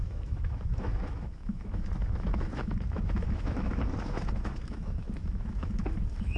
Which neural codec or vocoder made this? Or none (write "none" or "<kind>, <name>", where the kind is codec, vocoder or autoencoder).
autoencoder, DAC-VAE